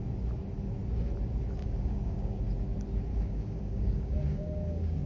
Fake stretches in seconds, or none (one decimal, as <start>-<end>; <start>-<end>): 1.6-2.4; 3.1-5.1